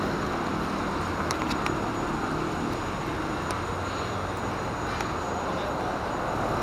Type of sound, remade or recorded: recorded